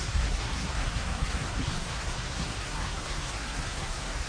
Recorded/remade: remade